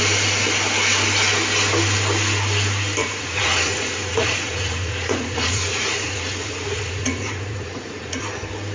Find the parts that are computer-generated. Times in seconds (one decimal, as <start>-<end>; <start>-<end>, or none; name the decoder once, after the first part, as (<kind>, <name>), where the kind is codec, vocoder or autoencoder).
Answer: 3.0-8.2 (vocoder, Vocos)